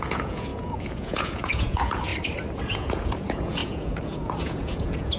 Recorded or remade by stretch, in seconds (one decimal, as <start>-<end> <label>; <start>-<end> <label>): 0.0-2.1 remade; 2.1-2.6 recorded; 2.6-5.2 remade